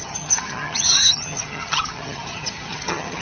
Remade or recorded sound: remade